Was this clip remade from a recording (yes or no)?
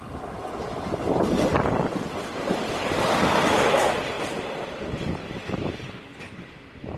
no